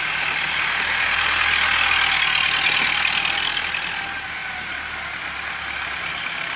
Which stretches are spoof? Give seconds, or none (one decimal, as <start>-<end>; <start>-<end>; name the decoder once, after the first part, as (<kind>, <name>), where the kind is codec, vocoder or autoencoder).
none

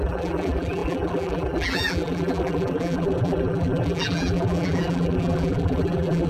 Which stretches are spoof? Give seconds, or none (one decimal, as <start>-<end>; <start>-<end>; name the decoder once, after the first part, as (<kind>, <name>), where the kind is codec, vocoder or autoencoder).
0.0-6.3 (vocoder, BigVGAN v2)

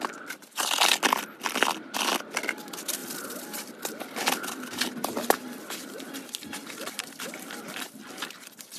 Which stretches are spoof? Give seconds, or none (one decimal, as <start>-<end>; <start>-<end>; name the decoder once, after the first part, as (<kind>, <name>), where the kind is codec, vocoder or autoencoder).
3.0-8.1 (vocoder, BigVGAN v2)

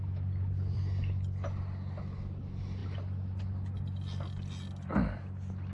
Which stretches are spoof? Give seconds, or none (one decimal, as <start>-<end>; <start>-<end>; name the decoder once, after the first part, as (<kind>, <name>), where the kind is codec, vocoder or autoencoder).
none

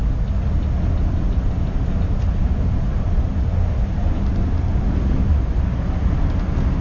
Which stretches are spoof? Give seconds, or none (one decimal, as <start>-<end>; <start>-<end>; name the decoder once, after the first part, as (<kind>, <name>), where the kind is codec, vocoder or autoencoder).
none

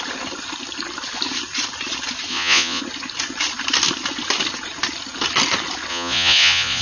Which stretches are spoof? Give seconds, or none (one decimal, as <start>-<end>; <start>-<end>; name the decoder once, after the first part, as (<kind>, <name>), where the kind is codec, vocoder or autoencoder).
2.3-2.8 (vocoder, Vocos); 5.9-6.8

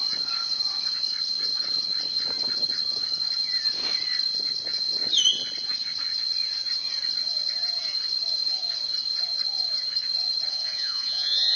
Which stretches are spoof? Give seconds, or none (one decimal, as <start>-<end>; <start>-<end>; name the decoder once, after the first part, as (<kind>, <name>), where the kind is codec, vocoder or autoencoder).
10.5-11.6 (vocoder, Vocos)